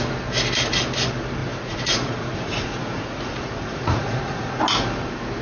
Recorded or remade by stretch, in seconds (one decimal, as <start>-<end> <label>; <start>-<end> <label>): 0.0-1.4 recorded; 1.4-4.6 remade; 4.6-5.4 recorded